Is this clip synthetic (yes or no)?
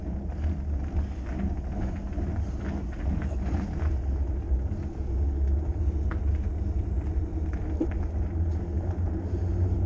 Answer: no